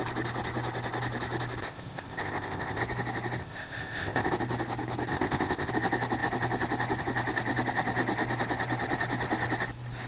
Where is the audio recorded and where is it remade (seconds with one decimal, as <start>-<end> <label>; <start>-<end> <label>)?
0.0-1.6 recorded; 1.6-2.8 remade; 2.8-3.4 recorded; 3.4-4.3 remade; 4.3-5.1 recorded; 5.1-5.7 remade; 5.7-10.1 recorded